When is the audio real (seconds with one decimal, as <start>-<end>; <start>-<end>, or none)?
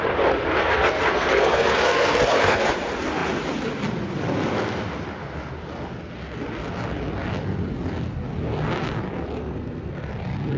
0.0-0.6; 2.7-9.4; 10.1-10.6